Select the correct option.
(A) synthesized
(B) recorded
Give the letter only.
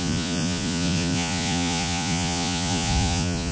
A